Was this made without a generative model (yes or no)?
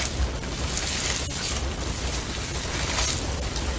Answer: yes